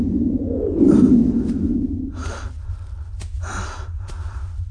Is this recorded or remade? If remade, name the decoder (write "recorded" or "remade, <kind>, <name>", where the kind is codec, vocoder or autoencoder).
recorded